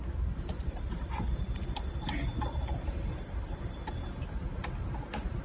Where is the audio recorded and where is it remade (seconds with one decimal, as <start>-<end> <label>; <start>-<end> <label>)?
0.0-5.4 recorded